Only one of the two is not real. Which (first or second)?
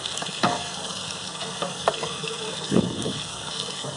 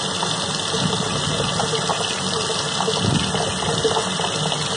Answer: first